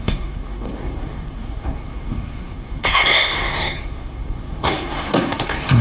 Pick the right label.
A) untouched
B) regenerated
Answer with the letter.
B